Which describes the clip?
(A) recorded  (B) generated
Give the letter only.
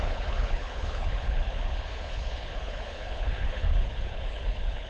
B